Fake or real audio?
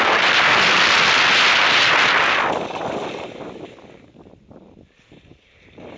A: real